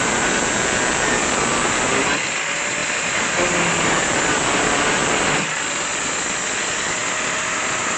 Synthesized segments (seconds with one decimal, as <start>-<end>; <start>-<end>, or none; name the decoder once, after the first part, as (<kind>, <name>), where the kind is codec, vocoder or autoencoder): none